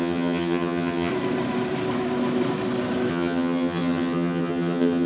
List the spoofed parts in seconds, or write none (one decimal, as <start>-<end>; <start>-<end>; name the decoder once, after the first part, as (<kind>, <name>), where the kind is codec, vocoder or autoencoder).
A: 0.0-1.1 (vocoder, HiFi-GAN); 3.1-5.1